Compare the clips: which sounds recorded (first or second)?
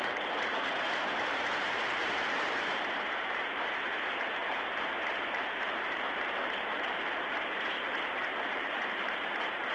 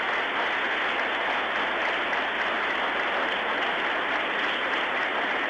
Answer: second